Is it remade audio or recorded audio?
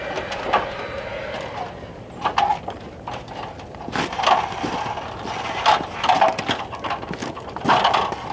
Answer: recorded